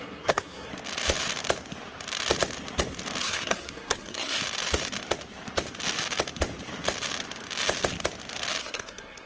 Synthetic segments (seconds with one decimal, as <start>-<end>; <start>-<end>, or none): 0.0-0.7; 3.2-4.4; 8.6-9.3